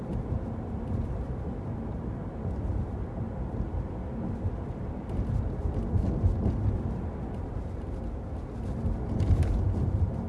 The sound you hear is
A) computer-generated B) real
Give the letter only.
B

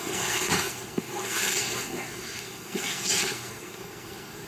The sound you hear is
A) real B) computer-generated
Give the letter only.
B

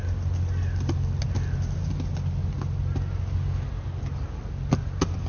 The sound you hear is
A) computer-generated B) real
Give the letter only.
B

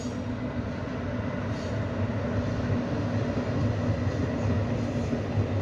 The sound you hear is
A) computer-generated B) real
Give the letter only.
B